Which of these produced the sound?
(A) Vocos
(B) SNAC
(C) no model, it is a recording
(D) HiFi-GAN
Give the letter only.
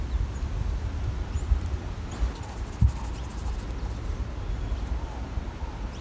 C